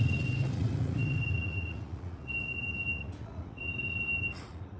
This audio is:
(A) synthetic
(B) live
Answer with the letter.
A